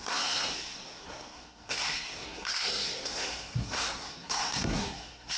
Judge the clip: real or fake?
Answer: fake